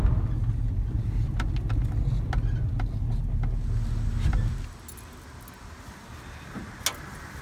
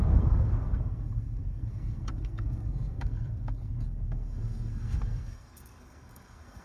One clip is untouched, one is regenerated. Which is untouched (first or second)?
first